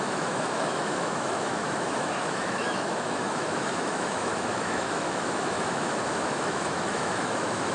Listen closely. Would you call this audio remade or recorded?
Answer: remade